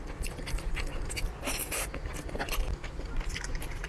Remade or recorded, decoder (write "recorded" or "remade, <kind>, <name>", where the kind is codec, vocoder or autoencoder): recorded